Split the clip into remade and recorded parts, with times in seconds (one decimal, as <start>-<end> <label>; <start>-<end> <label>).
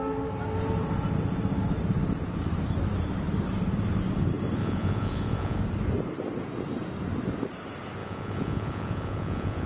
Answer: 0.0-4.6 recorded; 4.6-5.6 remade; 5.6-8.0 recorded; 8.0-9.7 remade